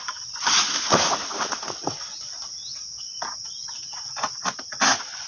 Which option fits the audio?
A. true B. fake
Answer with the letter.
A